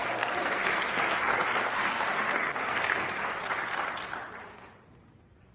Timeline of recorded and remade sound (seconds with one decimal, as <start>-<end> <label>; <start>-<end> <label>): 0.0-3.3 remade; 3.3-5.5 recorded